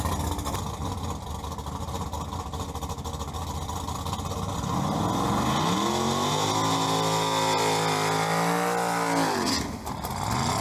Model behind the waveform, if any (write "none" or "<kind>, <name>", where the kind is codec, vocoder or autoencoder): none